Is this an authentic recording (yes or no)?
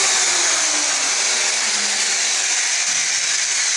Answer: yes